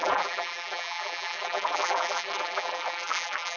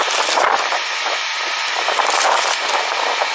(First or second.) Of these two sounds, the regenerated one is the first